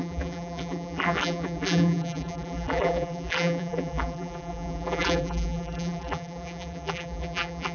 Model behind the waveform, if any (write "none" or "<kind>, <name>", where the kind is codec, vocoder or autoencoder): vocoder, BigVGAN v2